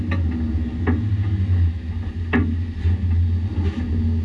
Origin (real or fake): real